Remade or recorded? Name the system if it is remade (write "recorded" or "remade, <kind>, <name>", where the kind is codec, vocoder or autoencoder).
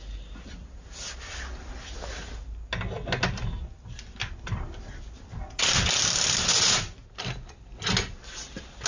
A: recorded